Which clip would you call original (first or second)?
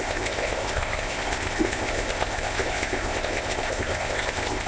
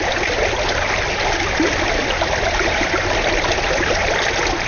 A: second